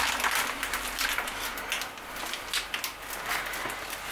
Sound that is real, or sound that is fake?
real